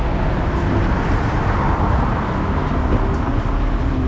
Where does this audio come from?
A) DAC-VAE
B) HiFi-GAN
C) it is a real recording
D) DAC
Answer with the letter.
C